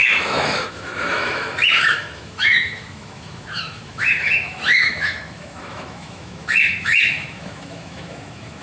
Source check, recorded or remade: remade